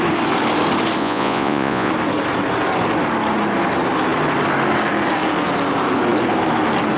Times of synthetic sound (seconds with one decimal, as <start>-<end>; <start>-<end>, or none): 1.0-1.9